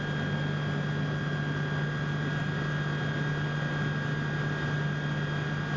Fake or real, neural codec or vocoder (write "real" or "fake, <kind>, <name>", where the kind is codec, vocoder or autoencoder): real